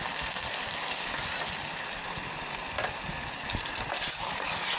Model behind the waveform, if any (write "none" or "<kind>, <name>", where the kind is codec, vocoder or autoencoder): none